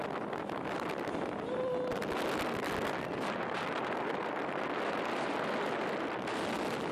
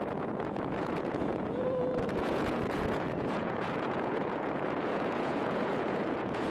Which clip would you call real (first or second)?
first